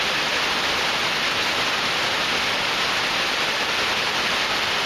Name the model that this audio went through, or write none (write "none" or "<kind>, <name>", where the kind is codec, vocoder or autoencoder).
none